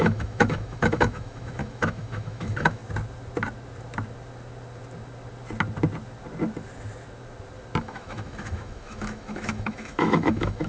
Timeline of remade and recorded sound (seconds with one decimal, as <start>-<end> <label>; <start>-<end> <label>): 0.0-2.8 remade; 2.8-7.8 recorded; 7.8-10.7 remade